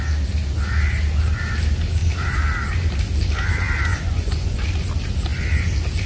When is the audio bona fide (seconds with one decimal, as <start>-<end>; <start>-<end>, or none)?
0.0-3.9; 4.6-6.1